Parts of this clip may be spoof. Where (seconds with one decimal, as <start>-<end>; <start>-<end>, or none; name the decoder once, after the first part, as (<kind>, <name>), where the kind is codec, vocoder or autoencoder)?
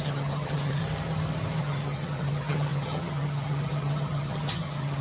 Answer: 0.0-0.8 (vocoder, HiFi-GAN); 1.6-5.0